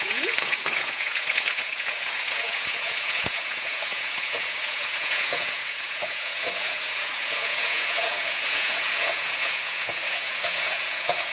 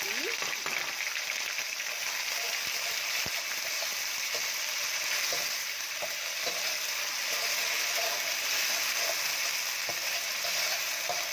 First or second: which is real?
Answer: second